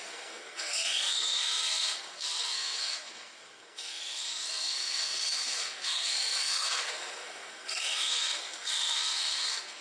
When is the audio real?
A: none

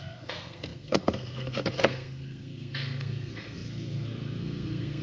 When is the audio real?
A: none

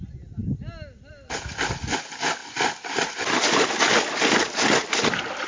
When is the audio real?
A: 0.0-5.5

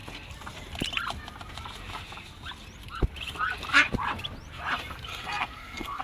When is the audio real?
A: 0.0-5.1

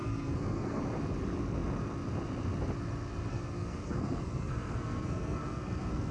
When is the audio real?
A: 0.8-3.3

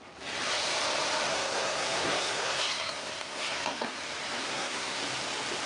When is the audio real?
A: 0.0-1.3; 4.0-4.4; 5.0-5.7

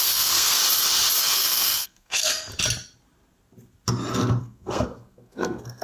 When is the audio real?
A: 0.6-1.2; 2.5-4.4